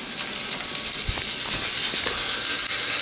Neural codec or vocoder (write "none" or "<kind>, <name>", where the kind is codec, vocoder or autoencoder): none